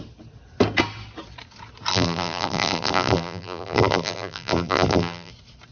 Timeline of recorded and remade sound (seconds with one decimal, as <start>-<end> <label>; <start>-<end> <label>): 0.0-1.9 recorded; 1.9-5.3 remade; 5.3-5.7 recorded